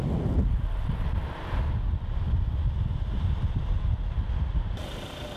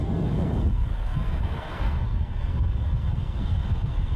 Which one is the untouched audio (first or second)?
first